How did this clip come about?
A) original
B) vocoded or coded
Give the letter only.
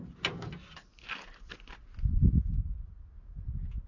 A